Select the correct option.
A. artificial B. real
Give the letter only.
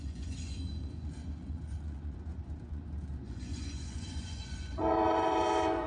A